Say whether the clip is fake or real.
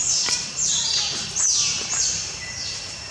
real